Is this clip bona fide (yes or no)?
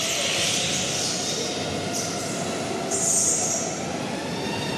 yes